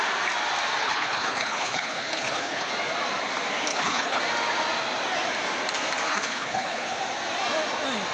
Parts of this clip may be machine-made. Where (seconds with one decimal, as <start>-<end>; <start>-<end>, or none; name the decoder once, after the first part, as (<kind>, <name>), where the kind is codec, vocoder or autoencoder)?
0.8-2.7 (codec, HILCodec); 3.7-4.2; 6.1-7.0